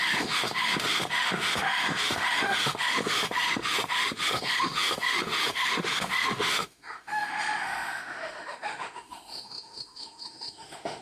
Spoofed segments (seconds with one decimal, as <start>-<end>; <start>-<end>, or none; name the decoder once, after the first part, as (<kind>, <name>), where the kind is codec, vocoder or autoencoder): 0.0-11.0 (autoencoder, DAC-VAE)